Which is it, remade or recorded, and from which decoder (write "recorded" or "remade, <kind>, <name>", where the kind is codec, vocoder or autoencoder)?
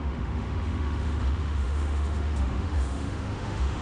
remade, autoencoder, DAC-VAE